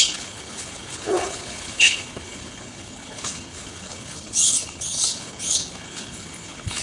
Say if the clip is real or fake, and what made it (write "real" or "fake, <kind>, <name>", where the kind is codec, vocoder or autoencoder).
fake, codec, HILCodec